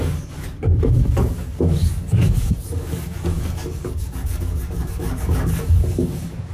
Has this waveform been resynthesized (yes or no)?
yes